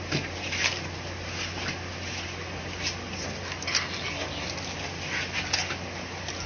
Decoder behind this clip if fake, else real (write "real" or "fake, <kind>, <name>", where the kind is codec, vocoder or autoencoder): real